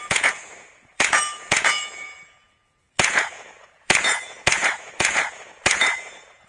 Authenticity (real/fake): fake